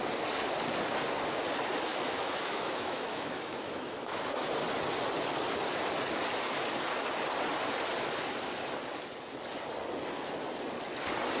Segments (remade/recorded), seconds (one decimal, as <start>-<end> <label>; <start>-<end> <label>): 0.0-1.9 recorded; 1.9-4.5 remade; 4.5-11.4 recorded